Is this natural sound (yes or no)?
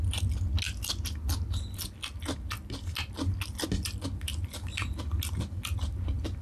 yes